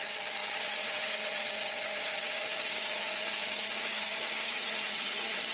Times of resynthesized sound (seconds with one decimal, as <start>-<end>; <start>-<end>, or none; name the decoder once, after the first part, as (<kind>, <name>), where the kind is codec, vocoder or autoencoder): 0.0-5.5 (vocoder, HiFi-GAN)